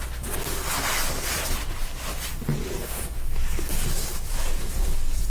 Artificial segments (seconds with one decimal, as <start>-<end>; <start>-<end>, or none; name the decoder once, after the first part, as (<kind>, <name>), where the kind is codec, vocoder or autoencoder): 2.6-5.3 (codec, DAC)